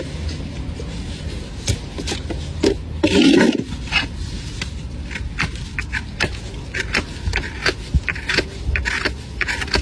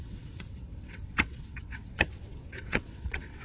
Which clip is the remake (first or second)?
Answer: second